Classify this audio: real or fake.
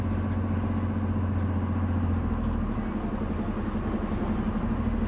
real